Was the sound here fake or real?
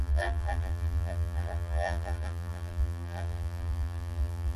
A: fake